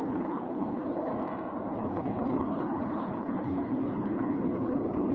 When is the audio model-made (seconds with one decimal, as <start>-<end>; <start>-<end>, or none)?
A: 0.0-1.1; 1.7-5.1